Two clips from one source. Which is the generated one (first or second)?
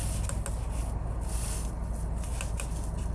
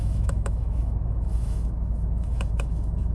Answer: second